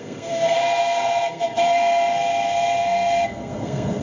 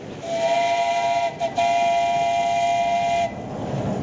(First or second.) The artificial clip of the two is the first